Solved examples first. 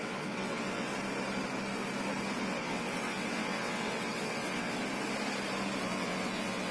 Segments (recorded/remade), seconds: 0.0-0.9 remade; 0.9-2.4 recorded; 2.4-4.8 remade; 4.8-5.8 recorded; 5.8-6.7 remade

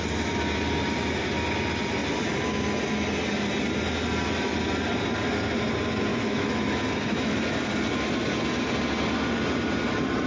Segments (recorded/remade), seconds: 0.0-6.1 recorded; 6.1-7.4 remade; 7.4-10.3 recorded